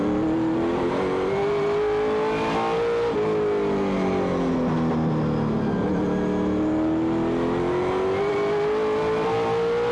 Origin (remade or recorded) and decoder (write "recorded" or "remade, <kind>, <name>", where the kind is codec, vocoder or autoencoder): recorded